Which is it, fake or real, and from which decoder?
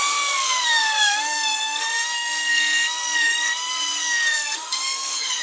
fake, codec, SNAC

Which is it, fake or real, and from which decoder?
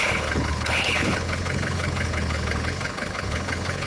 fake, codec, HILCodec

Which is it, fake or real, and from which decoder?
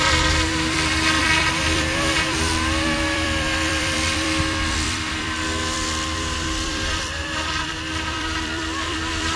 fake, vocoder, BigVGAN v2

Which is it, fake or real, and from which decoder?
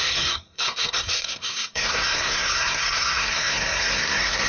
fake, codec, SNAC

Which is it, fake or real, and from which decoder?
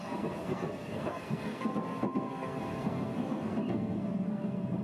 fake, codec, SNAC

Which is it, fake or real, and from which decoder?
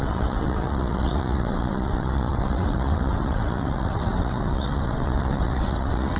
fake, vocoder, WaveNeXt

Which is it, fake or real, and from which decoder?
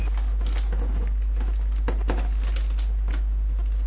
real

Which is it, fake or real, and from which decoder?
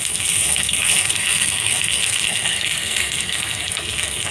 fake, codec, SNAC